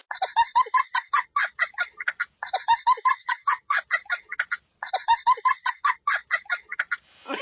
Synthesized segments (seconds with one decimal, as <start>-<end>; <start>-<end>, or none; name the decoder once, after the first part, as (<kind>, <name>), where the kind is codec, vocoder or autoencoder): 3.2-3.8 (codec, DAC)